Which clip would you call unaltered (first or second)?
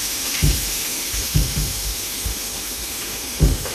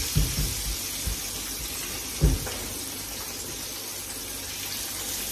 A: second